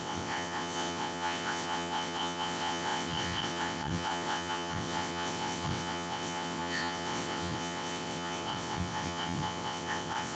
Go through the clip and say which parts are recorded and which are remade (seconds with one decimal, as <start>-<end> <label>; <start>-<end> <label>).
0.0-10.3 remade